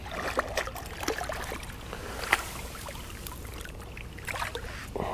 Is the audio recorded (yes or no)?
yes